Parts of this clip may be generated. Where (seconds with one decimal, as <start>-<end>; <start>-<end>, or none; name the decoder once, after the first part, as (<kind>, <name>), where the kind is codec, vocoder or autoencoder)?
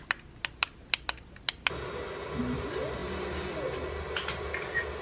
none